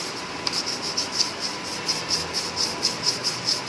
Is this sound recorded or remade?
recorded